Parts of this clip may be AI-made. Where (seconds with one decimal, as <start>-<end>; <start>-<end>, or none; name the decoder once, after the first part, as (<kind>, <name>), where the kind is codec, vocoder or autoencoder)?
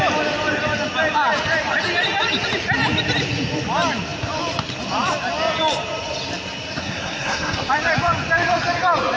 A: 6.8-7.7 (codec, SNAC)